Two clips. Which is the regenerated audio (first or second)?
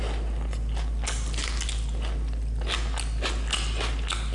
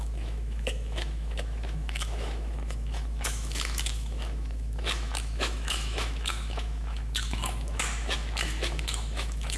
second